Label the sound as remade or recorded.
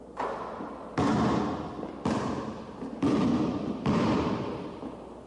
recorded